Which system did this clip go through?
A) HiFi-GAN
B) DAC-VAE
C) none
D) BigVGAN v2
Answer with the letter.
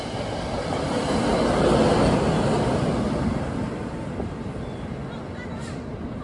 C